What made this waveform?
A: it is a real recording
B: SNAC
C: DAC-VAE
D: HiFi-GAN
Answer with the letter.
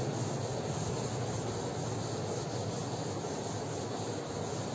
A